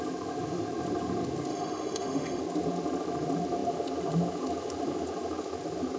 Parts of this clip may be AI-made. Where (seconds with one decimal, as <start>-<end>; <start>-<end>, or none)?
1.5-2.4